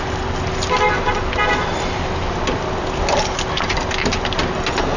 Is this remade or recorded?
recorded